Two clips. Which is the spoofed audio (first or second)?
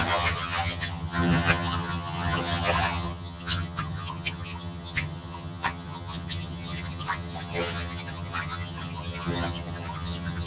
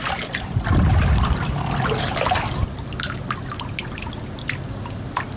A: first